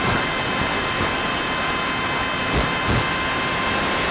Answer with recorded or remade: recorded